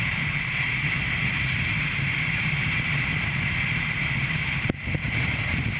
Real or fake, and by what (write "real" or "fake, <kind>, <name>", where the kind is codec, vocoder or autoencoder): fake, vocoder, BigVGAN v2